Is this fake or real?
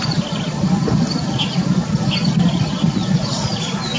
real